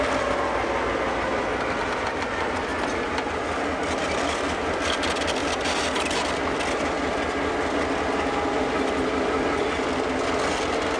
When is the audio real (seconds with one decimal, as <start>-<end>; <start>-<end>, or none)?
0.0-11.0